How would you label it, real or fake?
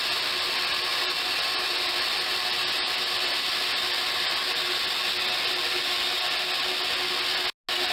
real